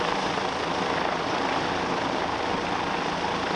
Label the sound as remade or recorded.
recorded